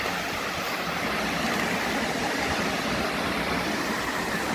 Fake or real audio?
real